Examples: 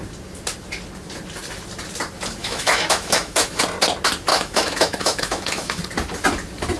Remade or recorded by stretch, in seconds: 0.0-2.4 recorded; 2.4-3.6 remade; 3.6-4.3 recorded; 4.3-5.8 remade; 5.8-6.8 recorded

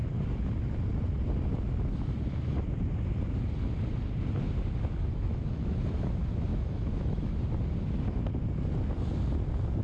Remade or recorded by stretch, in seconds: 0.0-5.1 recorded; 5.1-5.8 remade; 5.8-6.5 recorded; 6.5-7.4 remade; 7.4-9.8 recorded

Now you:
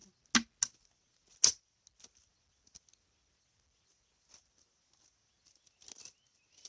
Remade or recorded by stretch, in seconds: 0.0-6.7 recorded

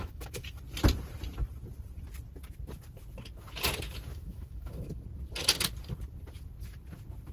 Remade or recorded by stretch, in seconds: 0.0-0.6 remade; 0.6-4.1 recorded; 4.1-5.0 remade; 5.0-7.3 recorded

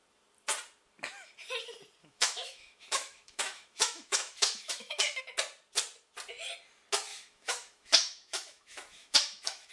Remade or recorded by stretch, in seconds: 0.0-2.0 recorded; 2.0-5.2 remade; 5.2-7.1 recorded; 7.1-9.7 remade

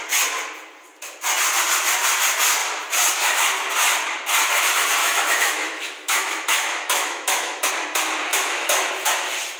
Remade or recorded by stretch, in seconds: 0.0-5.0 recorded; 5.0-7.7 remade; 7.7-8.3 recorded; 8.3-8.9 remade; 8.9-9.6 recorded